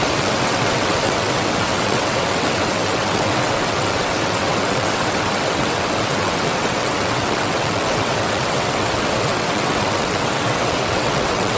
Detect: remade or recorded remade